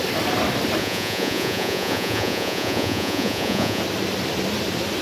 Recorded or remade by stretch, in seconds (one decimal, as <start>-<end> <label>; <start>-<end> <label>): 0.0-0.8 recorded; 0.8-3.8 remade; 3.8-5.0 recorded